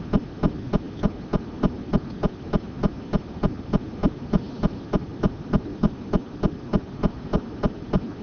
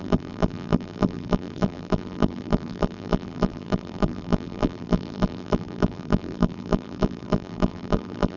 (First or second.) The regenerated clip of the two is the second